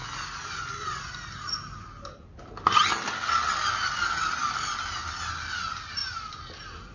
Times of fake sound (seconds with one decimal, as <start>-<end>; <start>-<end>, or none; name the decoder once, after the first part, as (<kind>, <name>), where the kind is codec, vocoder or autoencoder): none